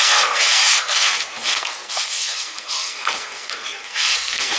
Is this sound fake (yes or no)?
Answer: yes